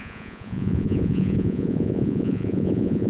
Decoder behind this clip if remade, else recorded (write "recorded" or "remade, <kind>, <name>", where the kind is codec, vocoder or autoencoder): remade, vocoder, Vocos